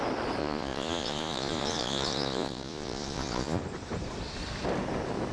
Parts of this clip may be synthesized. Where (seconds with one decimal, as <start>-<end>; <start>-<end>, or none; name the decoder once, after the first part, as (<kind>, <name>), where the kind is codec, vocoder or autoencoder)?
0.4-3.6 (vocoder, Vocos)